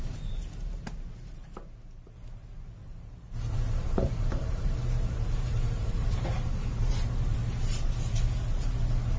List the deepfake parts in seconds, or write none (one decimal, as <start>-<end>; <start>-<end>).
2.8-6.9